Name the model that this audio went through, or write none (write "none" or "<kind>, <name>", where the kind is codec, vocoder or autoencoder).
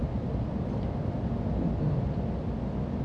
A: none